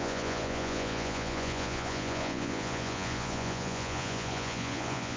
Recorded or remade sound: remade